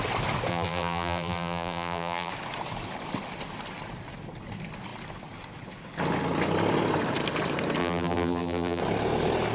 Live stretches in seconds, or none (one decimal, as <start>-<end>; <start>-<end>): 0.0-0.5; 2.3-7.8; 8.8-9.5